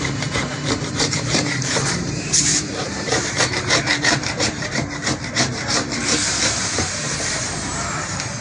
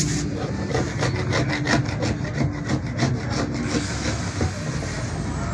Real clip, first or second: second